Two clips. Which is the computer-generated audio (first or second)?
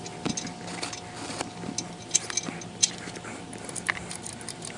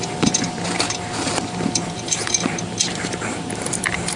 second